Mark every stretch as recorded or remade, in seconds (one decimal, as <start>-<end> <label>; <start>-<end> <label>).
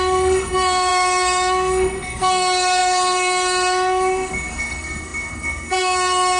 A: 0.0-6.4 remade